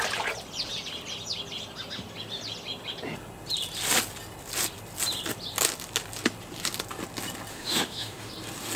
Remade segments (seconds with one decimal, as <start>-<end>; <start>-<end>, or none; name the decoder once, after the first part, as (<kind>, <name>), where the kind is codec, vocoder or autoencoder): 7.5-8.3 (autoencoder, DAC-VAE)